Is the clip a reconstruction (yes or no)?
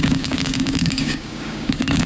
yes